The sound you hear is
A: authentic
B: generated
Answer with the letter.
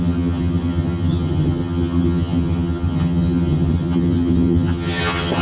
B